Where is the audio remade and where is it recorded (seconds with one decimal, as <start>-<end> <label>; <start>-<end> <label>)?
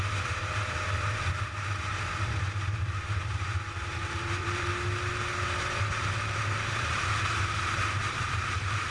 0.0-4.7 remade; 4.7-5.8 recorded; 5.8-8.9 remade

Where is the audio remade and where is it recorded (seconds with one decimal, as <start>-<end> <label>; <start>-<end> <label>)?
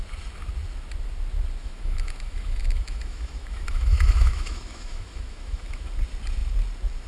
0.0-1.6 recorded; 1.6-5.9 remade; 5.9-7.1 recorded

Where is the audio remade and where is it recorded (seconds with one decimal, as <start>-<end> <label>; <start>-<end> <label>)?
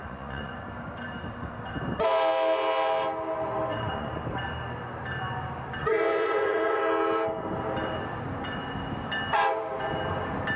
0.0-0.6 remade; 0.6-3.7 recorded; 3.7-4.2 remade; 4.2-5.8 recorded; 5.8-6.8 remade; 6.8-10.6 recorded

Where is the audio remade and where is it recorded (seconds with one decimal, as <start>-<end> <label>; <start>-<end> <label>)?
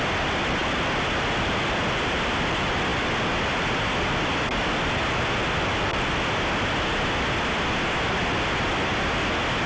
0.0-9.7 recorded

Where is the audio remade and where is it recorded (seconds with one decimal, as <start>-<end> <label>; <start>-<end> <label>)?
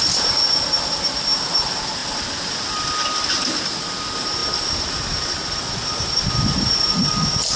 0.0-7.6 recorded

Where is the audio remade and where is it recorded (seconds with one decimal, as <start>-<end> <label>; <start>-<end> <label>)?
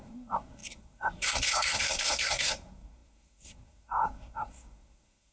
0.0-5.3 remade